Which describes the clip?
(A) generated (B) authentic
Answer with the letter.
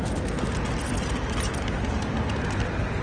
B